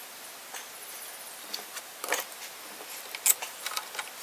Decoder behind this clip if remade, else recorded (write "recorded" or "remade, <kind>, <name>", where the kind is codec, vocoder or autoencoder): recorded